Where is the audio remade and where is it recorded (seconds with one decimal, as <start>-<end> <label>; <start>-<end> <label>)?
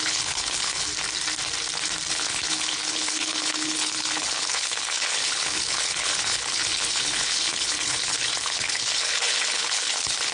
0.0-0.9 remade; 0.9-2.1 recorded; 2.1-10.3 remade